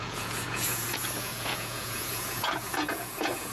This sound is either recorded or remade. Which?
remade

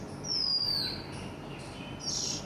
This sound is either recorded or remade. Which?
recorded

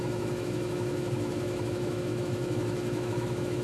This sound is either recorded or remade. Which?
remade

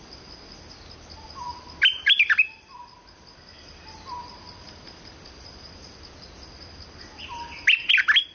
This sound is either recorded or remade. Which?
recorded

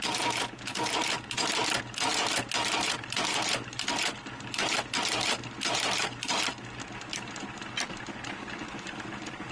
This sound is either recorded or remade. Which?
recorded